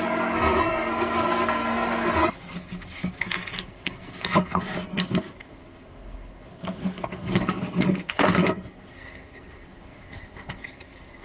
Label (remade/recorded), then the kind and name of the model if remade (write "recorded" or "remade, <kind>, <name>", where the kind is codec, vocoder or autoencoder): remade, codec, SNAC